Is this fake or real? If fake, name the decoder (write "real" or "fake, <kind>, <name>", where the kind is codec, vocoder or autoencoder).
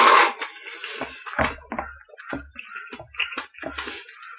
real